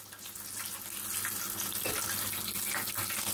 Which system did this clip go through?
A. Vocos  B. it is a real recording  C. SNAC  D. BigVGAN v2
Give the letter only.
B